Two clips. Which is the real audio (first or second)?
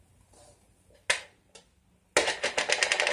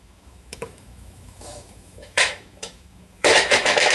first